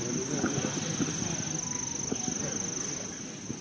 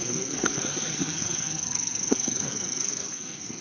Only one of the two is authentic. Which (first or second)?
first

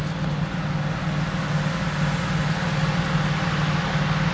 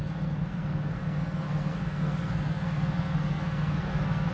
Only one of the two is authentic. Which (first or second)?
first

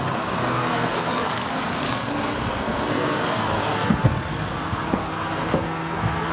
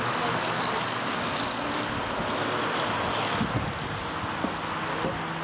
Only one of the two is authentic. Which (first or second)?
second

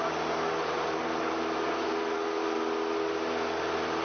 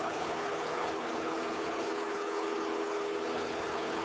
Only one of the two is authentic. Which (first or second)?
first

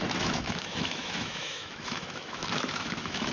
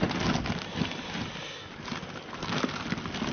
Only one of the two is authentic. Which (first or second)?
second